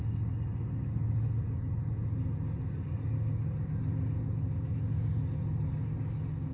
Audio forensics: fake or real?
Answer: real